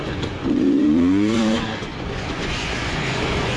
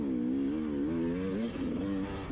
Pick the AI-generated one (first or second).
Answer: first